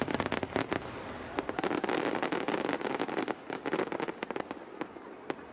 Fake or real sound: real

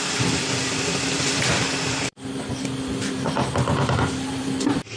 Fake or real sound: fake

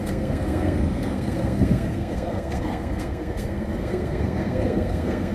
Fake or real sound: fake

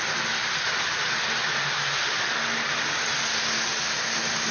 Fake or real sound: real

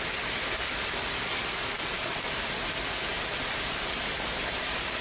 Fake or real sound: real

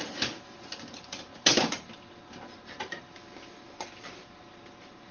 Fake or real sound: fake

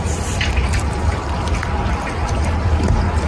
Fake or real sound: real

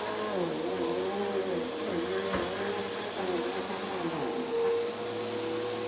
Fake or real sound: real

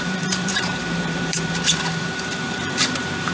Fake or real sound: fake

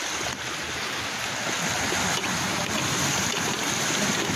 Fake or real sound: real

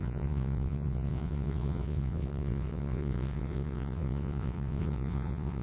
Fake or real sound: fake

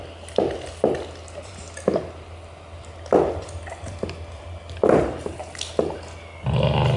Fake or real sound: real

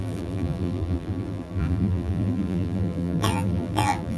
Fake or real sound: fake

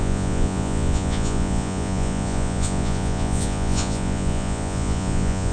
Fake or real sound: fake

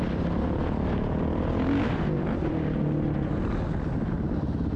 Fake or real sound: real